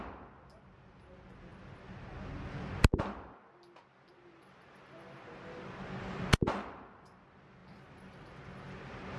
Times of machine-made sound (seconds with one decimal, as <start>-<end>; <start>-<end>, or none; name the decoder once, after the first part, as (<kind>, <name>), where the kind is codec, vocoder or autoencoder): none